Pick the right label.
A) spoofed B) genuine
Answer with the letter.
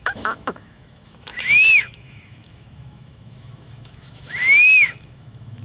A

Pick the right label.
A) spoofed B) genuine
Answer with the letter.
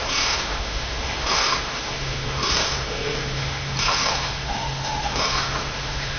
A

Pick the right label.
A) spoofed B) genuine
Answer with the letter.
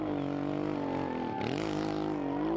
B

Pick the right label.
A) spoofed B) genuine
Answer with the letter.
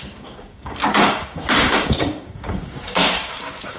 A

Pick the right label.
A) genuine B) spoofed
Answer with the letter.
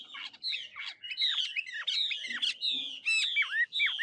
A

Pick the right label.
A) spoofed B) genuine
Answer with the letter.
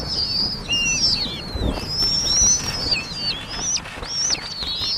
B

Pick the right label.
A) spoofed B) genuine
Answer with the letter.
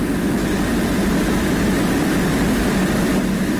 A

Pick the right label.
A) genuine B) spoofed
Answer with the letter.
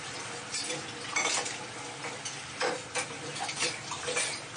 A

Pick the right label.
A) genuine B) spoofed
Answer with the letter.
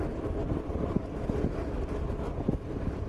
A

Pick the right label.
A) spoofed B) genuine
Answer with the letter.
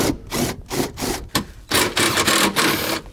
A